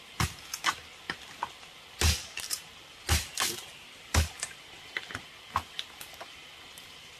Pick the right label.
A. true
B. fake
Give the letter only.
A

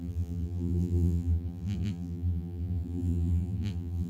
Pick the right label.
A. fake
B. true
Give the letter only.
A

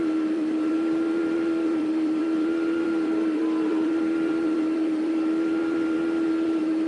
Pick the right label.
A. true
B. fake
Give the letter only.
B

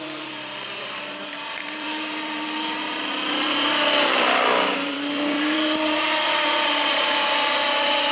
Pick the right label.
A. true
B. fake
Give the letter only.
B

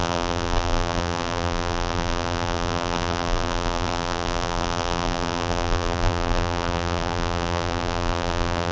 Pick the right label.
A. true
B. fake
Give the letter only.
B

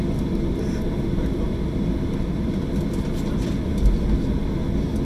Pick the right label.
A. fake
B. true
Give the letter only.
B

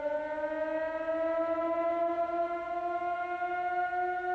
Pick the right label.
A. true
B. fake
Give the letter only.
A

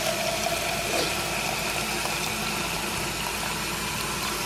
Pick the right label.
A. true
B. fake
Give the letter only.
A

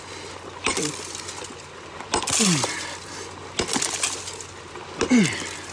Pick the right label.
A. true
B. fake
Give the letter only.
A